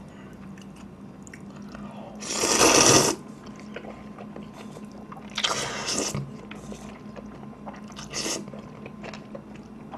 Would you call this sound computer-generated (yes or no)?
no